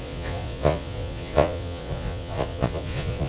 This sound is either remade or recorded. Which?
remade